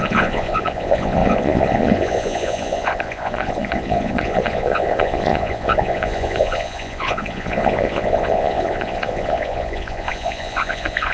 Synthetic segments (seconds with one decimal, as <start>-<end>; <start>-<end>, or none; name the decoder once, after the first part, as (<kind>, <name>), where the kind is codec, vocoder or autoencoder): 0.0-11.1 (vocoder, Vocos)